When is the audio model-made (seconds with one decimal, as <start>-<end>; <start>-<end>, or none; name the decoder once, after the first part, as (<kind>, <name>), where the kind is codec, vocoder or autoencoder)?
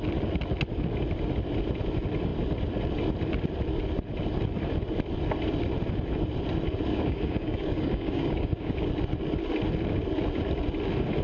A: 6.9-8.9 (codec, DAC)